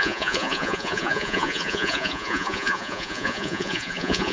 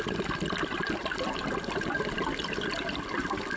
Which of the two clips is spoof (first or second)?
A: first